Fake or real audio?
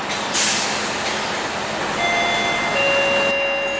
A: real